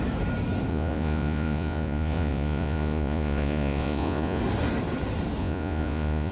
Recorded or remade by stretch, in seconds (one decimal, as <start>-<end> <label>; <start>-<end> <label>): 0.0-0.7 recorded; 0.7-4.4 remade; 4.4-5.4 recorded; 5.4-6.3 remade